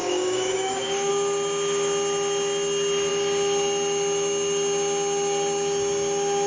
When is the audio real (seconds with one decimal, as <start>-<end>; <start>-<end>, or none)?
1.1-6.5